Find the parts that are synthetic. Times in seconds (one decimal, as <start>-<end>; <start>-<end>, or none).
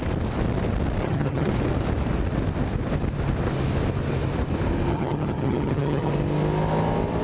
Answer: 1.0-1.5; 4.9-6.1